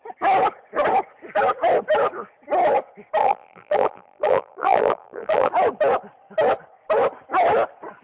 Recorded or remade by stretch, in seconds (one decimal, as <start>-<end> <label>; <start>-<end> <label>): 0.0-3.2 recorded; 3.2-5.5 remade; 5.5-8.0 recorded